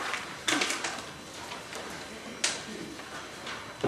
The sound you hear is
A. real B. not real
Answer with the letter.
A